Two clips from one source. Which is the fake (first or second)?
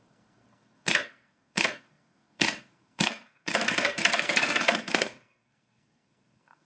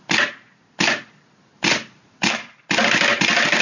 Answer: first